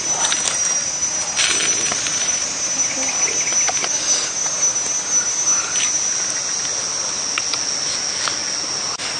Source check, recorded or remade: recorded